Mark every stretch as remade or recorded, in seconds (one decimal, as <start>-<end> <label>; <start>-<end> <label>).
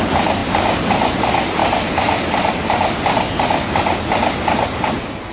0.0-5.3 recorded